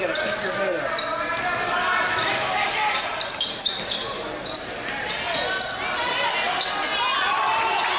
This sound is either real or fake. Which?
real